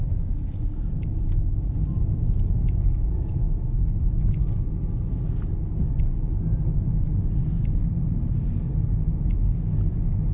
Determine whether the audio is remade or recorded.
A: recorded